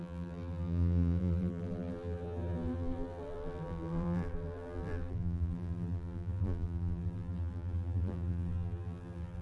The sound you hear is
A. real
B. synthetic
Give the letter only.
B